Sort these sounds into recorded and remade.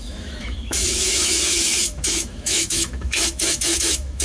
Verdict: remade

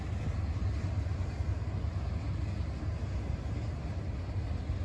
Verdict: recorded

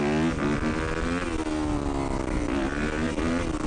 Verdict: recorded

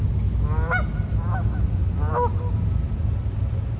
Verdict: recorded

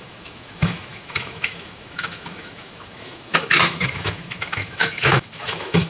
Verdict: remade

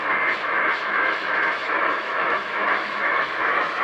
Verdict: remade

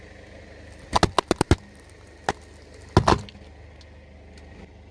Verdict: recorded